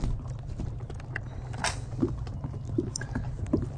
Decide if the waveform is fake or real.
real